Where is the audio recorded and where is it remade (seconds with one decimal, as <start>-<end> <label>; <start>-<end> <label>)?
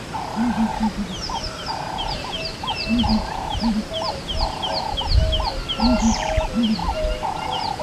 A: 0.0-0.7 recorded; 0.7-4.2 remade; 4.2-7.8 recorded